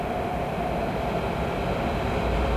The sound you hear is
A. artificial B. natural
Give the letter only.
B